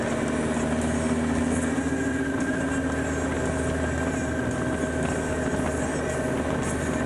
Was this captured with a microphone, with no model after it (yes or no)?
yes